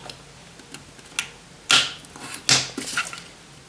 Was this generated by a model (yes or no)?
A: no